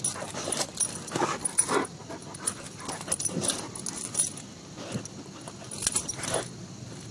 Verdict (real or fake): real